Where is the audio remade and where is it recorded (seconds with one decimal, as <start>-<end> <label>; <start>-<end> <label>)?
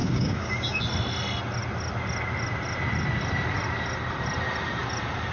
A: 0.0-0.8 remade; 0.8-5.3 recorded